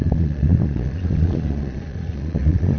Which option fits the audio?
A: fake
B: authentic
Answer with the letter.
A